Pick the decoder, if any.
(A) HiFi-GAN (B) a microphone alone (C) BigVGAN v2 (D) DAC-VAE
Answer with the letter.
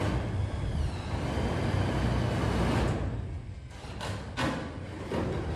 B